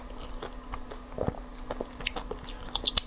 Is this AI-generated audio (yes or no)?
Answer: no